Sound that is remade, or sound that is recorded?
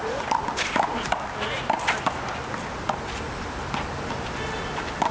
recorded